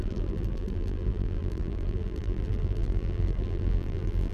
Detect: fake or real fake